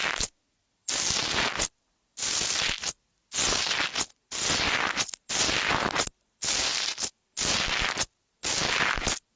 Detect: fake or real real